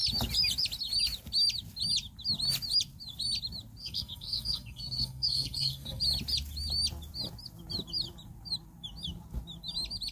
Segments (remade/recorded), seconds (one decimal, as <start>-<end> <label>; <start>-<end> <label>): 0.0-3.8 recorded; 3.8-6.0 remade; 6.0-10.1 recorded